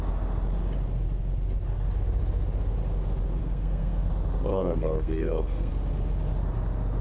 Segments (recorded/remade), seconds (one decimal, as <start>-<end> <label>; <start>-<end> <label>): 0.0-3.4 recorded; 3.4-4.1 remade; 4.1-4.5 recorded; 4.5-5.7 remade; 5.7-7.0 recorded